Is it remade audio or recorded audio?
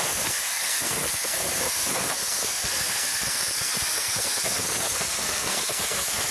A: remade